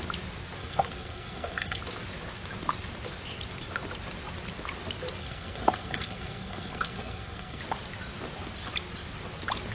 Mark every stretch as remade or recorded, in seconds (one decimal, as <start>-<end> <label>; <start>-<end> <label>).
0.0-0.6 recorded; 0.6-1.8 remade; 1.8-5.2 recorded; 5.2-7.6 remade; 7.6-9.7 recorded